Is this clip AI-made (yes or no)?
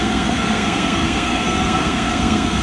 yes